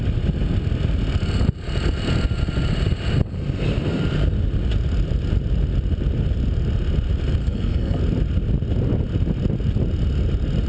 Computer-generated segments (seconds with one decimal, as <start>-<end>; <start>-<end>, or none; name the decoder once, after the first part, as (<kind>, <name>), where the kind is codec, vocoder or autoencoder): 7.4-8.0 (codec, SNAC)